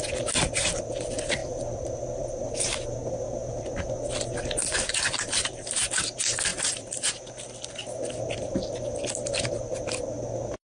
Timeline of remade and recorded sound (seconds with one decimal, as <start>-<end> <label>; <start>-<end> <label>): 0.0-1.4 recorded; 1.4-2.5 remade; 2.5-6.5 recorded; 6.5-7.1 remade; 7.1-10.6 recorded